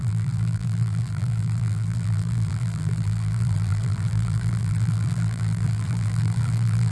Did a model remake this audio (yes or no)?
yes